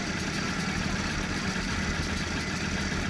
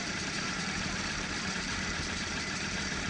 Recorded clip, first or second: first